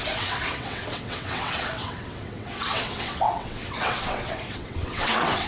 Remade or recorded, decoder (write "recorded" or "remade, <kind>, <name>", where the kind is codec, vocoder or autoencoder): remade, vocoder, WaveNeXt